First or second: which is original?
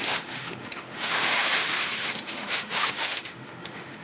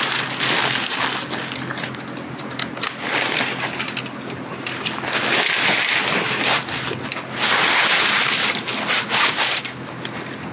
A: second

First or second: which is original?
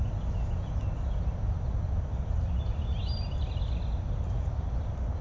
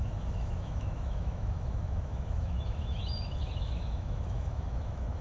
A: first